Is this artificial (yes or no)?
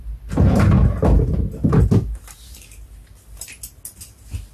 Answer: no